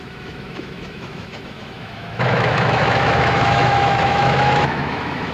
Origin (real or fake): fake